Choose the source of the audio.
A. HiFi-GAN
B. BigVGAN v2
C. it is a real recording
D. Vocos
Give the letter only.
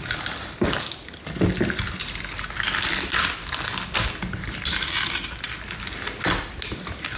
C